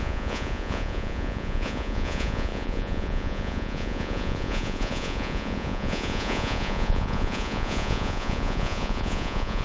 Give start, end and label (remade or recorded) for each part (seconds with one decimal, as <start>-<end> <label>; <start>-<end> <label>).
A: 0.0-9.6 remade

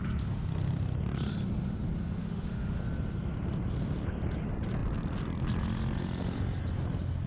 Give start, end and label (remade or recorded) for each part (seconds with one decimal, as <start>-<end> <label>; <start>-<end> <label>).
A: 0.0-2.2 recorded; 2.2-2.8 remade; 2.8-7.3 recorded

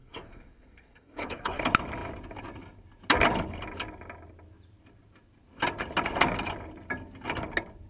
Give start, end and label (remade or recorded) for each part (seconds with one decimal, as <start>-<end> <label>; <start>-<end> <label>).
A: 0.0-1.6 remade; 1.6-7.9 recorded

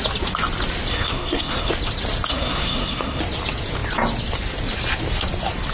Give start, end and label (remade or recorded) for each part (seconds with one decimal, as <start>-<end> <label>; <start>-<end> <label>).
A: 0.0-0.9 recorded; 0.9-1.7 remade; 1.7-2.3 recorded; 2.3-3.2 remade; 3.2-5.7 recorded

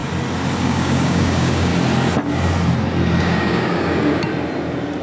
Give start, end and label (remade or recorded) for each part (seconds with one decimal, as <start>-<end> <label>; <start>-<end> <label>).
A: 0.0-0.6 recorded; 0.6-1.7 remade; 1.7-3.2 recorded; 3.2-4.1 remade; 4.1-5.0 recorded

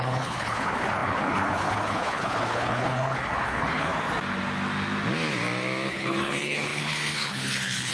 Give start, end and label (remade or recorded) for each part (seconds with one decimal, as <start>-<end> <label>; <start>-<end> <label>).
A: 0.0-3.9 remade; 3.9-5.9 recorded; 5.9-7.9 remade

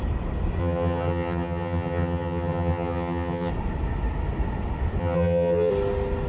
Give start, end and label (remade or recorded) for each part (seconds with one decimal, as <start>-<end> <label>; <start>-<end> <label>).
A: 0.0-0.6 recorded; 0.6-3.5 remade; 3.5-5.0 recorded; 5.0-5.7 remade; 5.7-6.3 recorded